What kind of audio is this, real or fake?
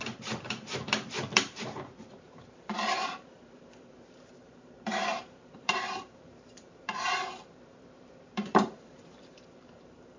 fake